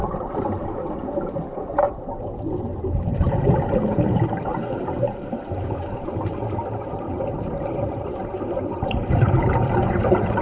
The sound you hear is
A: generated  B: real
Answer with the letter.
A